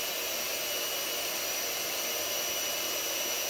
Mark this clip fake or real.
real